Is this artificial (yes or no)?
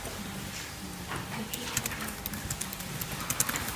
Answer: no